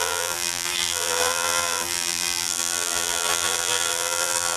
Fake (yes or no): yes